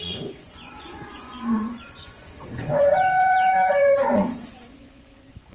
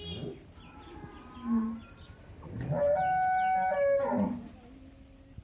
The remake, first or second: first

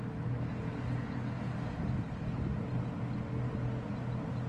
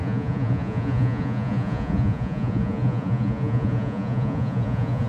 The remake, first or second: second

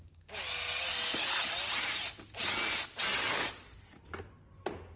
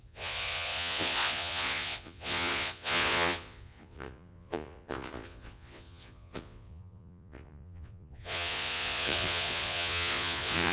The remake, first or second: second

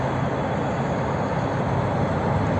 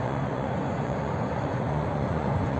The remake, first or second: second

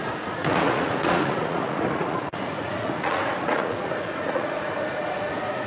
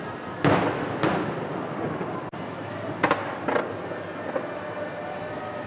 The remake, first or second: first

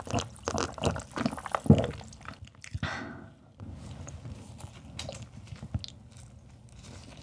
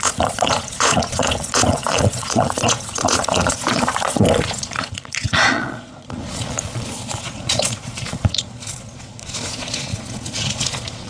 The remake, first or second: second